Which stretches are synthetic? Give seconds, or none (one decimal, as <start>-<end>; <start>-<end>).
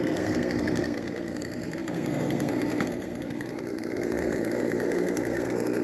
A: 0.0-5.8